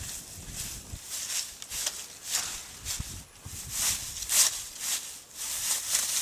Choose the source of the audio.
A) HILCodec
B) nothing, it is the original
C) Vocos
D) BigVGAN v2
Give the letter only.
B